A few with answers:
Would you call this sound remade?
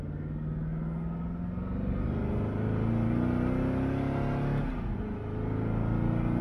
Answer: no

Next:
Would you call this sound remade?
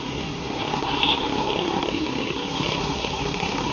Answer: yes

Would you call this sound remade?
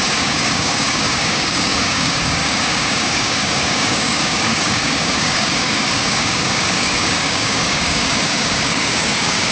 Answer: yes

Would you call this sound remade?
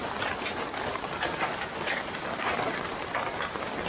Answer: no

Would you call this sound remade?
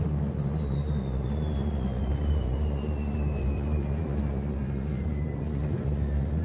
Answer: yes